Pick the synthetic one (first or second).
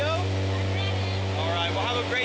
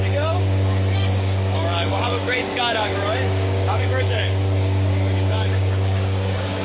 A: second